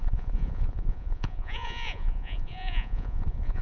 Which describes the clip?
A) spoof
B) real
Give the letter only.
A